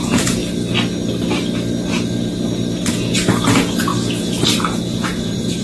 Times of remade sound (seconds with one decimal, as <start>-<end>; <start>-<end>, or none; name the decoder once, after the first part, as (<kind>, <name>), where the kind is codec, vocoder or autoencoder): 0.0-0.4 (vocoder, Vocos); 2.9-3.9; 4.7-5.6